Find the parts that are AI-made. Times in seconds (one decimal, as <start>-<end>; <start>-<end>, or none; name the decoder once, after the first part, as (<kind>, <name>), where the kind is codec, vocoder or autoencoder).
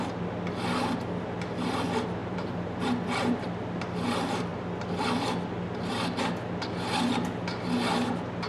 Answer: 2.2-2.8 (vocoder, BigVGAN v2)